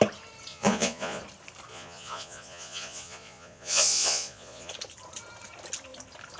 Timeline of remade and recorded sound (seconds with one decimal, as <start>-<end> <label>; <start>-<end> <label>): 0.0-0.5 recorded; 0.5-1.2 remade; 1.2-1.7 recorded; 1.7-4.7 remade; 4.7-6.4 recorded